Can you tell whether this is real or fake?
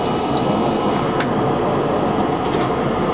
real